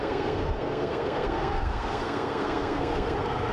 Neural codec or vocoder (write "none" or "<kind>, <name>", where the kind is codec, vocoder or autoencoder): codec, SNAC